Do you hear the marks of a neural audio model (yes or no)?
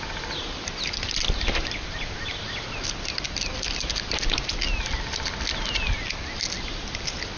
no